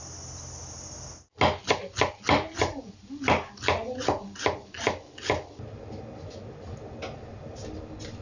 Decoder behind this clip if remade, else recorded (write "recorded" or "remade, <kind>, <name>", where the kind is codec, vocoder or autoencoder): recorded